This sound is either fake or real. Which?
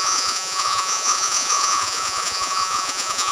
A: fake